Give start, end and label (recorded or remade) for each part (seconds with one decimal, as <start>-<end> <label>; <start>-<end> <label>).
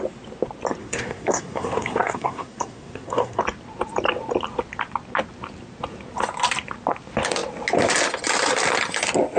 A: 0.0-0.8 recorded; 0.8-3.4 remade; 3.4-9.4 recorded